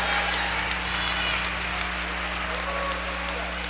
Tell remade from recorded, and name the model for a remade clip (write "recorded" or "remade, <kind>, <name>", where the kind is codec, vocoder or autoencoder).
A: recorded